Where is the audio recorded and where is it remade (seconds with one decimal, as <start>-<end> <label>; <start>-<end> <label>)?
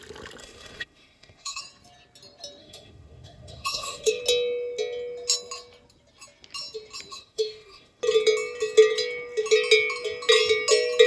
0.0-0.4 recorded; 0.4-1.6 remade; 1.6-2.6 recorded; 2.6-4.2 remade; 4.2-7.1 recorded; 7.1-8.0 remade; 8.0-11.1 recorded